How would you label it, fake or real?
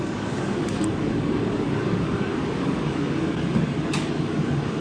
fake